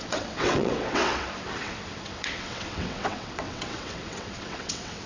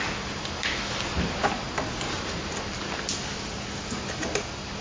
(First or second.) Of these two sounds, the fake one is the first